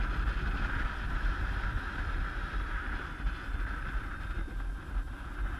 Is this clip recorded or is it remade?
recorded